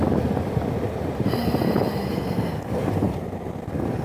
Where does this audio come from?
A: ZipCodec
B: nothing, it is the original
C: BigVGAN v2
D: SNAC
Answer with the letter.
C